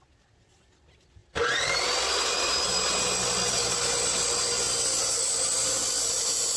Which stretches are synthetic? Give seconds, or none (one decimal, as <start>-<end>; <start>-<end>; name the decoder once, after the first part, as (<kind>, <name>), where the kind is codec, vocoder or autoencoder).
none